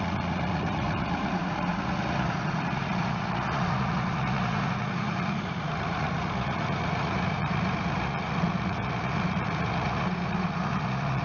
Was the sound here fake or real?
fake